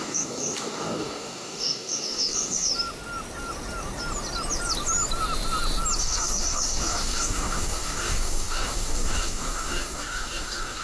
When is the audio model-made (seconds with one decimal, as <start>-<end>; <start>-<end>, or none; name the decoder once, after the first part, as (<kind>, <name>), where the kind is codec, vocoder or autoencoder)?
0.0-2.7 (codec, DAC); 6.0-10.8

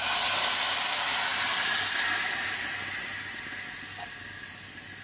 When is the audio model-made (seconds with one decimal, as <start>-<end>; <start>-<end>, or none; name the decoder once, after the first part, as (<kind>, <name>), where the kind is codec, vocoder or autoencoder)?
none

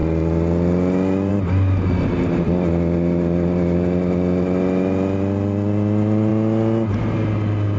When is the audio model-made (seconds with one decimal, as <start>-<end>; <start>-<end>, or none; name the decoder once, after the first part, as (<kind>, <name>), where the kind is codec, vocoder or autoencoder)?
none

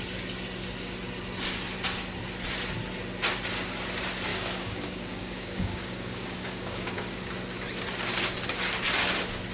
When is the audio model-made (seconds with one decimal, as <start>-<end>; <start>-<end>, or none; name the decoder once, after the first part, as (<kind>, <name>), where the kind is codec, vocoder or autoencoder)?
4.3-7.3 (codec, DAC)

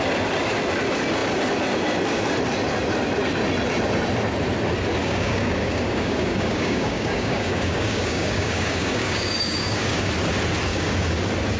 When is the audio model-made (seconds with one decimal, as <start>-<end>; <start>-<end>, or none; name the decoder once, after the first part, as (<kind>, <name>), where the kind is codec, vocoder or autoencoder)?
5.0-10.1 (codec, DAC); 10.7-11.2

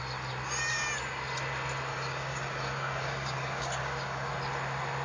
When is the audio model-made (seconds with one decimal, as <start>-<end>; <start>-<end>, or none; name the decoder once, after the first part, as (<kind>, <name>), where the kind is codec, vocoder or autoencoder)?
1.9-4.3 (codec, DAC)

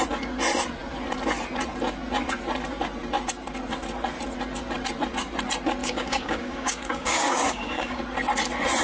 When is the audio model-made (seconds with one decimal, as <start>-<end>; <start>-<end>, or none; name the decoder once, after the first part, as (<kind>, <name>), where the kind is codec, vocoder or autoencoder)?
5.8-8.0 (codec, DAC)